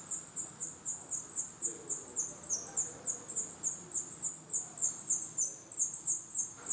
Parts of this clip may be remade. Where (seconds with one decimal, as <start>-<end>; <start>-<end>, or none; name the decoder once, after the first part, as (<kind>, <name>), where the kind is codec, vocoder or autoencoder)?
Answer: none